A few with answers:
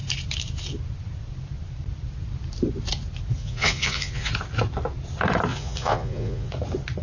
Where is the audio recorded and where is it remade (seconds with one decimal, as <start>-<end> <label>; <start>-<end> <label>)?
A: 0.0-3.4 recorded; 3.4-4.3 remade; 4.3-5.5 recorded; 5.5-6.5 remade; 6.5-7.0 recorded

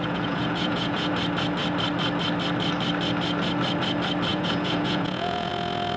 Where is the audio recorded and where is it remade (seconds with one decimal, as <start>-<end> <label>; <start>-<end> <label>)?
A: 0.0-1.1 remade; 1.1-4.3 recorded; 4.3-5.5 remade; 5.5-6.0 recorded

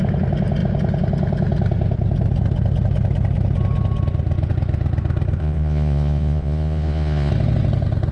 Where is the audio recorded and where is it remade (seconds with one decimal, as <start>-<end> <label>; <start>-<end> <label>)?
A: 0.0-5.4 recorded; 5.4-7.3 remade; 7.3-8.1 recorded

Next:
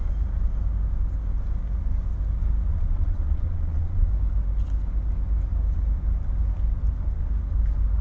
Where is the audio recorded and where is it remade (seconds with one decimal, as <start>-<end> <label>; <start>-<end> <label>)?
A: 0.0-2.7 recorded; 2.7-4.1 remade; 4.1-8.0 recorded

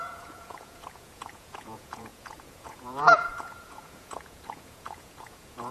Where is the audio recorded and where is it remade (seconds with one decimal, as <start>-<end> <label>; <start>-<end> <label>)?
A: 0.0-5.7 remade